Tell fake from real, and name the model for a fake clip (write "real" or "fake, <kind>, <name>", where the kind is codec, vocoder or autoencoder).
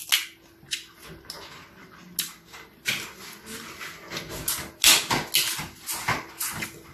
real